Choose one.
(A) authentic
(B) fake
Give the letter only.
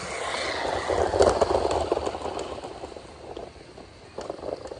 A